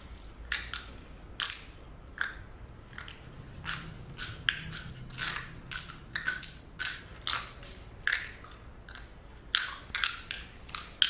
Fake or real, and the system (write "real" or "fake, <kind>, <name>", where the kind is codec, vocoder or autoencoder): real